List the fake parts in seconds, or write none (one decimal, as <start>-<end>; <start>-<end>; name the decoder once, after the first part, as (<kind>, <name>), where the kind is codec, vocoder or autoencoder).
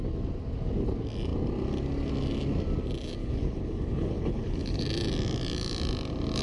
3.2-4.8 (codec, HILCodec)